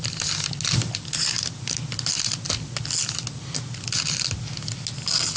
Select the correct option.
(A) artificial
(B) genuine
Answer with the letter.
B